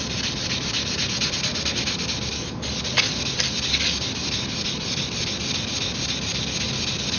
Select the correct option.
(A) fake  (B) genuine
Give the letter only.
B